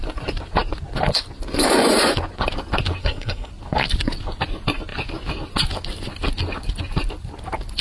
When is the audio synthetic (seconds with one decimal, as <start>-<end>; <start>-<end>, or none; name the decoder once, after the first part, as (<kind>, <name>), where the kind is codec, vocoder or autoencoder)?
3.0-3.5 (codec, SNAC)